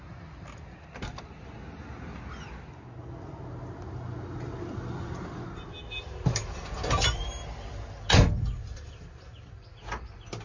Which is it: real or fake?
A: real